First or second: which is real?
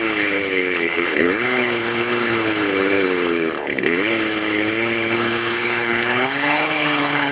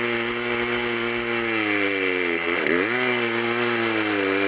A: second